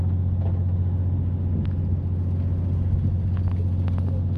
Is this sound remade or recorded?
recorded